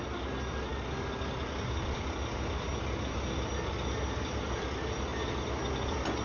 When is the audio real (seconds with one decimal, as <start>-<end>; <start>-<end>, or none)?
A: 0.0-6.2